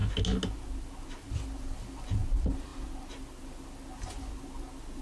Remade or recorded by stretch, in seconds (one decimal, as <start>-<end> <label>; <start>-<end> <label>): 0.0-5.0 recorded